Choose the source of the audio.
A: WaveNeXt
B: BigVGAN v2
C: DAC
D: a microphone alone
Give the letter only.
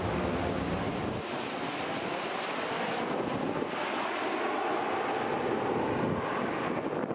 D